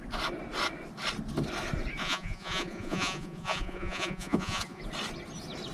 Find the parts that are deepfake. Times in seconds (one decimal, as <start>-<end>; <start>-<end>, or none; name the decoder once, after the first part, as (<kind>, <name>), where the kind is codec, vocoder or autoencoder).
2.0-4.8 (vocoder, Vocos)

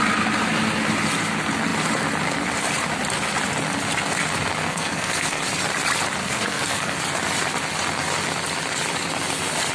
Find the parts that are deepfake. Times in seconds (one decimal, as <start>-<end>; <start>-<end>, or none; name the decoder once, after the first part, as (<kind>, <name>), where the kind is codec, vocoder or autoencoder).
4.6-5.4 (codec, SNAC); 6.2-7.0

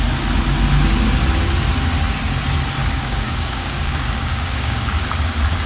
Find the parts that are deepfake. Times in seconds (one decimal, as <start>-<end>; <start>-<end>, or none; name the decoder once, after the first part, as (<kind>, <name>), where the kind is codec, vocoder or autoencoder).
2.8-5.0 (codec, DAC)